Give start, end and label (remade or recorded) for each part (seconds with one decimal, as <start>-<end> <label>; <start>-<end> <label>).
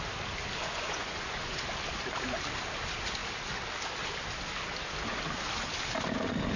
0.0-0.6 recorded; 0.6-1.6 remade; 1.6-6.6 recorded